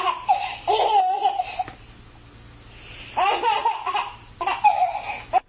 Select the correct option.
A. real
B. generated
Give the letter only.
A